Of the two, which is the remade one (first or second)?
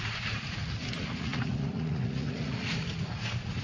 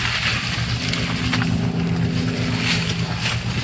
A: first